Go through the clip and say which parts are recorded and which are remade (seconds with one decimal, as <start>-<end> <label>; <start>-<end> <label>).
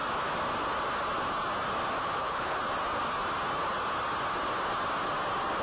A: 0.0-2.0 recorded; 2.0-2.6 remade; 2.6-5.6 recorded